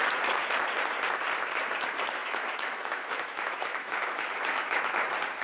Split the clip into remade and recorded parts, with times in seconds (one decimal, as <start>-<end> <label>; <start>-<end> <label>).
0.0-2.2 recorded; 2.2-4.8 remade; 4.8-5.4 recorded